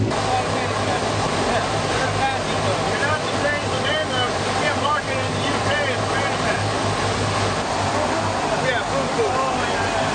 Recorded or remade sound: recorded